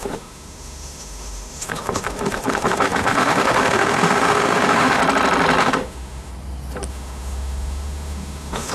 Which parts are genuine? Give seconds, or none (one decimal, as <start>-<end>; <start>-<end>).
5.0-5.6; 6.3-6.9